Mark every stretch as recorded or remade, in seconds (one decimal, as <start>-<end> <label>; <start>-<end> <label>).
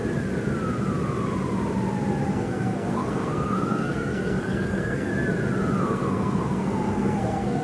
0.0-2.3 recorded; 2.3-5.1 remade; 5.1-5.8 recorded; 5.8-7.6 remade